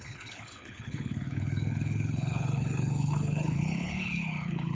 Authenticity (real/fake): fake